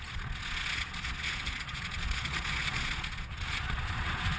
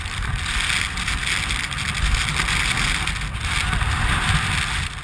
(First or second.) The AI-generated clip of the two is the first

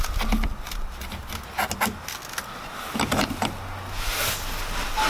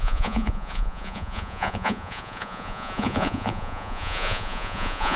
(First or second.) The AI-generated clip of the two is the second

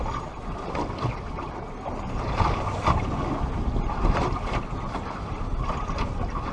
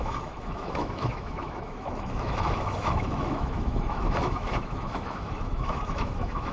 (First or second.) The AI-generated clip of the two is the second